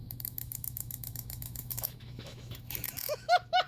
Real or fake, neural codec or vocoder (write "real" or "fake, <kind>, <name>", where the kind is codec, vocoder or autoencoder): fake, autoencoder, DAC-VAE